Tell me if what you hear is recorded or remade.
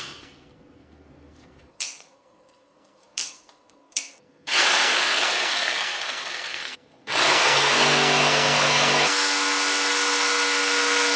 remade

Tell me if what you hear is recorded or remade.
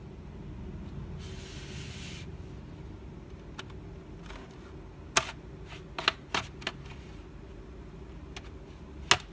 recorded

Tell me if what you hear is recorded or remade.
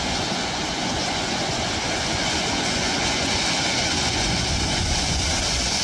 remade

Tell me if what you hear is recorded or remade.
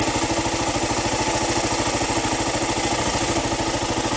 recorded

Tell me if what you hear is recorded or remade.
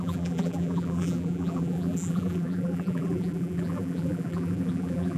remade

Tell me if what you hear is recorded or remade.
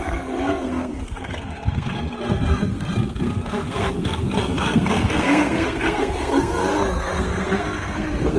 remade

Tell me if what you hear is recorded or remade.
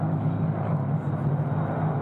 recorded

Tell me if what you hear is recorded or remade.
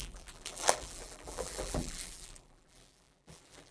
remade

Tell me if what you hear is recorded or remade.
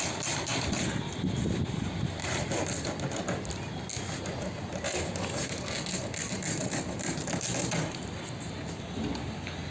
recorded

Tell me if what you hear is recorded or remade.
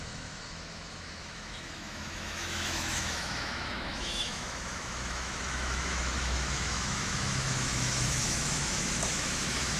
remade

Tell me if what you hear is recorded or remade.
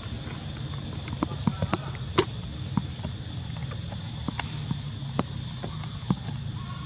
recorded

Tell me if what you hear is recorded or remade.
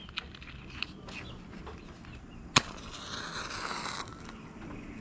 recorded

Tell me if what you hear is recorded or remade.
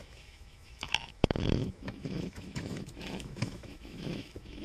remade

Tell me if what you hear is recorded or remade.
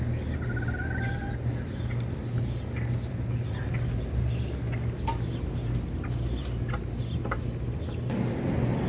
recorded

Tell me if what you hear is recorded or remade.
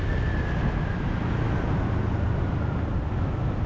recorded